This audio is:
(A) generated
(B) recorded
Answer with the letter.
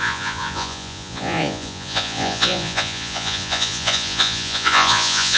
A